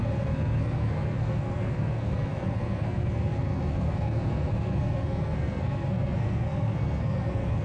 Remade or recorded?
remade